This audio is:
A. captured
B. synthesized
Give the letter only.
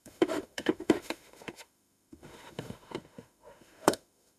B